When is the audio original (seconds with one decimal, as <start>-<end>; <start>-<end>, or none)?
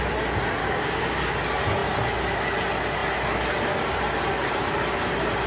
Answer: 0.0-0.6; 1.2-5.5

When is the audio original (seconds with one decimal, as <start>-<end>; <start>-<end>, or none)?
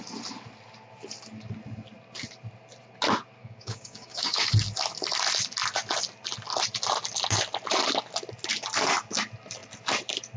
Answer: 0.0-3.4; 4.5-10.4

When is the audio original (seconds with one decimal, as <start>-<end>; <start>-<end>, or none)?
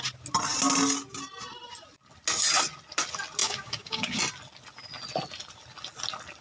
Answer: 0.0-3.4; 4.2-6.4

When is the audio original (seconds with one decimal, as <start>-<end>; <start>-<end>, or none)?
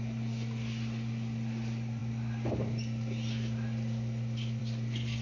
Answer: 0.0-5.2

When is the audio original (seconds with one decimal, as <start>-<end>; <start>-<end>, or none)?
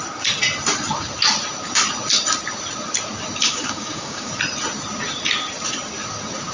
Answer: 0.0-3.4; 4.3-6.5